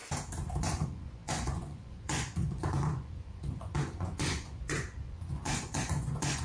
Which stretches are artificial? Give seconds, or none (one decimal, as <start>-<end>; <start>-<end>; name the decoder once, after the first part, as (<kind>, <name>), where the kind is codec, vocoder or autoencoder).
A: 0.6-6.4 (vocoder, Vocos)